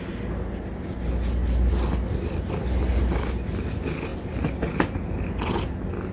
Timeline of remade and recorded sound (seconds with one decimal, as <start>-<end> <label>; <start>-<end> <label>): 0.0-6.1 recorded